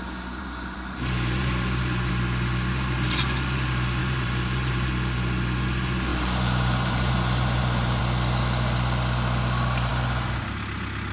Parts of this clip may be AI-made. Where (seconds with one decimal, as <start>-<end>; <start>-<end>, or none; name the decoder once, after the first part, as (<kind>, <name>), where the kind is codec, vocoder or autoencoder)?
0.4-2.1 (vocoder, BigVGAN v2); 4.0-4.9; 6.1-8.0